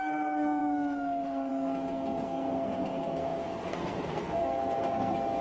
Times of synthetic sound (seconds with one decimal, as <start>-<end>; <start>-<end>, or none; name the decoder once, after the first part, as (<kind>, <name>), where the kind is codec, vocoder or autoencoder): 0.0-5.4 (codec, SNAC)

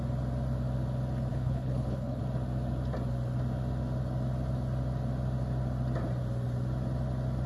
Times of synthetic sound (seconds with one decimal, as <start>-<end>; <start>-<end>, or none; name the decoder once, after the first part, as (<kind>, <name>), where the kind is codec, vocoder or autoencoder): 1.3-2.2 (codec, HILCodec)

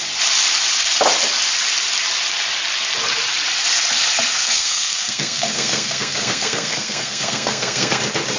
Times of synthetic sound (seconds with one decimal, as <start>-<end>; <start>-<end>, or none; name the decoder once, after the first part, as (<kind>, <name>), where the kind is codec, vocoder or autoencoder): 4.4-8.0 (codec, SNAC)

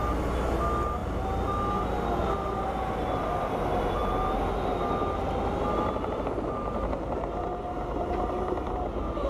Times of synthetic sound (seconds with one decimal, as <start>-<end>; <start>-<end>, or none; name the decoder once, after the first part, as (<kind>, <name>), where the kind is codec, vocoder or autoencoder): none

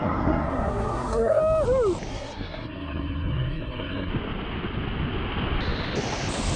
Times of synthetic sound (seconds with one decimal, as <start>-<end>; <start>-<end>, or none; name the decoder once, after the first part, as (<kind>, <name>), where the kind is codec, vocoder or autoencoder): 0.0-1.4 (codec, SNAC); 2.1-4.1

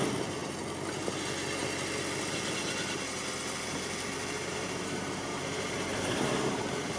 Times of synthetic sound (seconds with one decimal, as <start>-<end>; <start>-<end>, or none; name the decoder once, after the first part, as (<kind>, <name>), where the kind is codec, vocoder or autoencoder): 4.5-7.0 (vocoder, BigVGAN v2)